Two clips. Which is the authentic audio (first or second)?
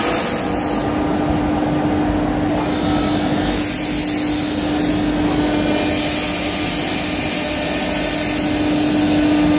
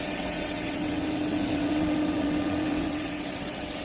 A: first